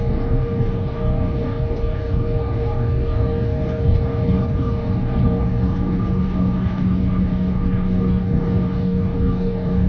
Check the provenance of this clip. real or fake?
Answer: fake